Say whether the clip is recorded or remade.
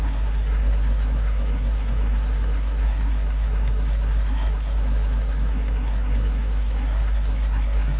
remade